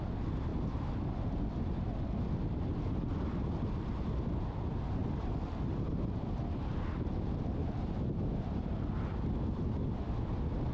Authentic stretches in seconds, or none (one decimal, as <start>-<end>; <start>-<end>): 0.0-10.7